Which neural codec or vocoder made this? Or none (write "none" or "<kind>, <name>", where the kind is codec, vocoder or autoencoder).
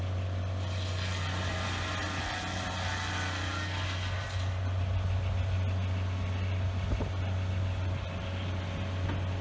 none